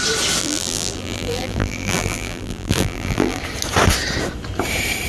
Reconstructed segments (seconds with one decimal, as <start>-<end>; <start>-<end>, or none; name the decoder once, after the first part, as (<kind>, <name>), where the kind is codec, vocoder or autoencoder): 0.4-3.4 (vocoder, BigVGAN v2)